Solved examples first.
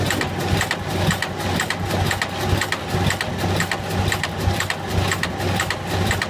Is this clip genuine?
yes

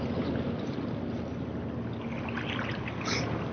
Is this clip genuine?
yes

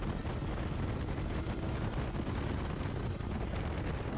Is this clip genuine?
yes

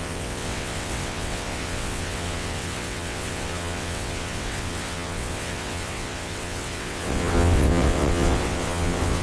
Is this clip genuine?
no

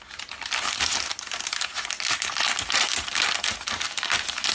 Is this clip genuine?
yes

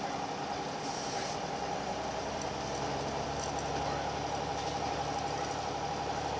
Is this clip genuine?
yes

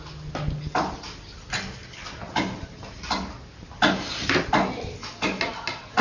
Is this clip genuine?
yes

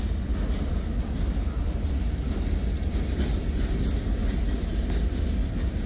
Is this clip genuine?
yes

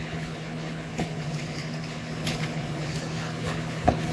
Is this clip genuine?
no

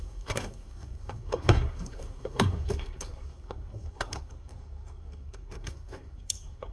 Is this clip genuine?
no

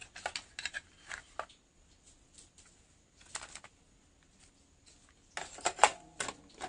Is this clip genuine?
yes